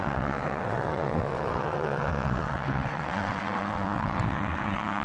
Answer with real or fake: fake